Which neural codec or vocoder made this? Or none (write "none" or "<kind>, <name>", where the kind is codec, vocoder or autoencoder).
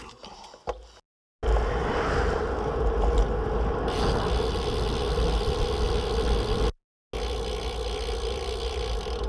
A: none